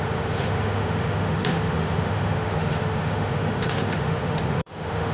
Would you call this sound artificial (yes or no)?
yes